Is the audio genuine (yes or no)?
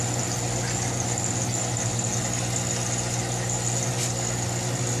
yes